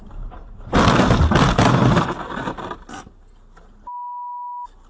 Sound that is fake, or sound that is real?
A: real